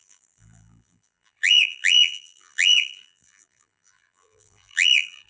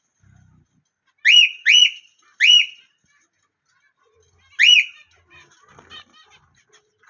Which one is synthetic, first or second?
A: first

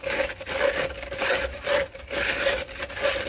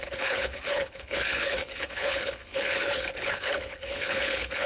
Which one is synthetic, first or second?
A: second